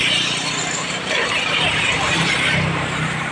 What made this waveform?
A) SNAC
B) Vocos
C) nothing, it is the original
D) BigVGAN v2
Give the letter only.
D